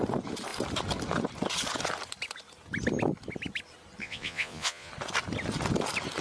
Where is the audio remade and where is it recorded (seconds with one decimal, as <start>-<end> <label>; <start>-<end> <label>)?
0.0-4.0 recorded; 4.0-4.9 remade; 4.9-6.2 recorded